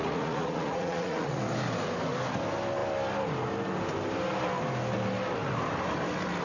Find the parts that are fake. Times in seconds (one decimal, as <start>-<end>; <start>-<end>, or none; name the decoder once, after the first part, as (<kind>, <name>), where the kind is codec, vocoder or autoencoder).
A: 0.0-1.4 (vocoder, Vocos)